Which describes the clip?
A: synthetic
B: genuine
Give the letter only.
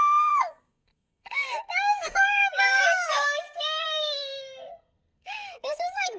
A